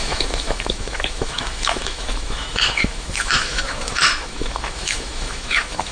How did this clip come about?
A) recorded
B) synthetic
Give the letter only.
B